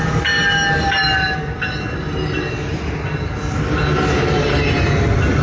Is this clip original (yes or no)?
yes